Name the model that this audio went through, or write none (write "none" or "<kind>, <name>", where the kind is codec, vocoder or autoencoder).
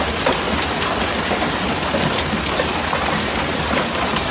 none